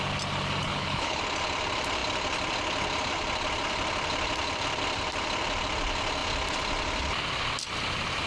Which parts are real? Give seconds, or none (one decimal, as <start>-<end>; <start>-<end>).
0.0-0.6; 1.2-8.3